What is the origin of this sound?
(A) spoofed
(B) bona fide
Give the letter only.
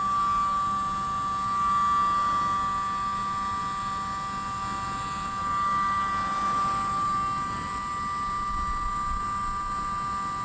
B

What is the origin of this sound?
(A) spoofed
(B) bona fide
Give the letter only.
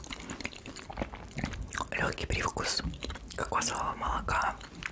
B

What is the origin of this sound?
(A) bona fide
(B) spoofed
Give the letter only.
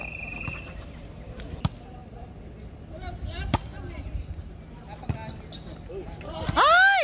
A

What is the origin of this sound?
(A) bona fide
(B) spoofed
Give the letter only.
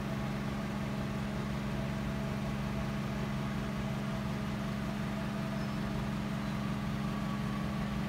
A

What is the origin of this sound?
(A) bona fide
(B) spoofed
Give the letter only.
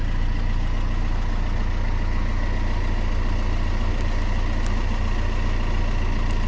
A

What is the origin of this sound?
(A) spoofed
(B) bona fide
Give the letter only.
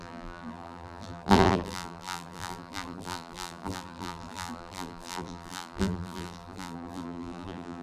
A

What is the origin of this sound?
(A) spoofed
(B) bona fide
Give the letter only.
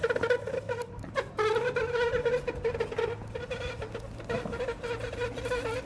B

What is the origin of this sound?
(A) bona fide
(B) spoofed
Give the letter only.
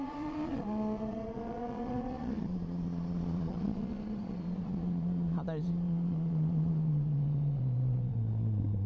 B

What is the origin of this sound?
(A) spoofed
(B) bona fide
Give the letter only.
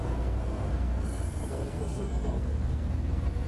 A